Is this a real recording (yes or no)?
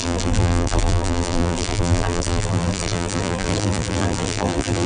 no